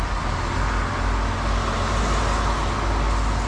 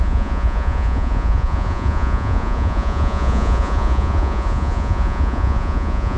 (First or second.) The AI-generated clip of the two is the second